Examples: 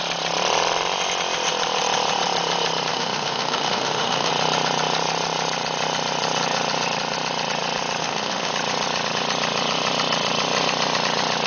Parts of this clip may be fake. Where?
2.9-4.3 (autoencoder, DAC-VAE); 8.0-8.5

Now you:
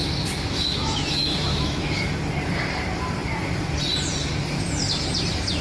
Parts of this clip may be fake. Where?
0.0-2.1 (autoencoder, DAC-VAE)

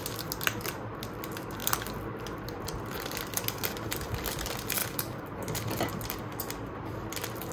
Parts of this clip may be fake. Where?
none

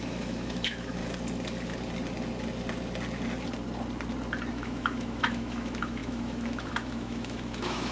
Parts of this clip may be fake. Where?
0.0-1.0 (autoencoder, DAC-VAE); 4.5-7.9

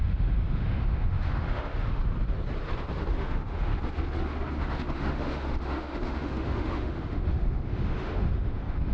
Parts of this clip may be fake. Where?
0.0-2.0 (autoencoder, DAC-VAE); 3.1-3.7; 4.6-8.9